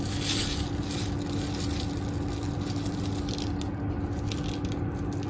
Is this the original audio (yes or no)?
yes